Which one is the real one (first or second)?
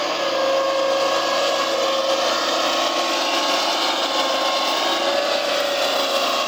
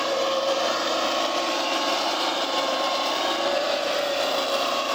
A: first